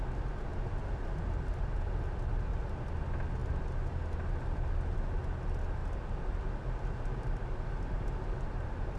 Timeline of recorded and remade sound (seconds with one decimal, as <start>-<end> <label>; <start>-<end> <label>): 0.0-9.0 recorded